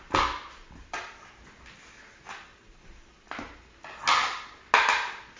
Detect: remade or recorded recorded